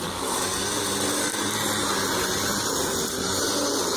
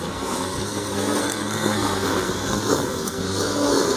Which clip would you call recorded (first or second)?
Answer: first